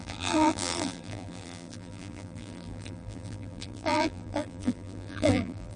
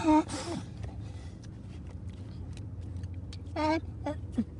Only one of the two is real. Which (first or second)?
second